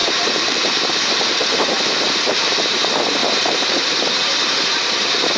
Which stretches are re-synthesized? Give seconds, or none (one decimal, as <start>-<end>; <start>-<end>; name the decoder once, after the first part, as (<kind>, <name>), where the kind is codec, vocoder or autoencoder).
0.0-2.8 (vocoder, BigVGAN v2); 3.2-5.4